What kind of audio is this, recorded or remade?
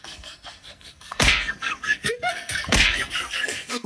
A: remade